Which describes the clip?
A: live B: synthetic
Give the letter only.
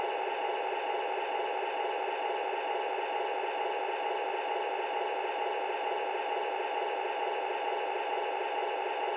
A